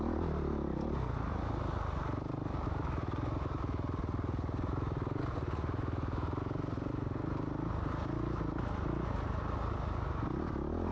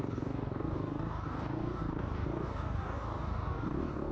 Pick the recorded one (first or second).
first